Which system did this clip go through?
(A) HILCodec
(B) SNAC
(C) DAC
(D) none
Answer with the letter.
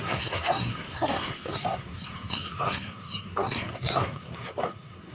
B